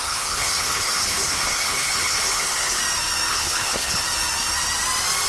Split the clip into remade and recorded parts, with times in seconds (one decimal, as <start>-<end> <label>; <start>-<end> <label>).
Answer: 0.0-2.8 remade; 2.8-3.3 recorded; 3.3-4.0 remade; 4.0-5.3 recorded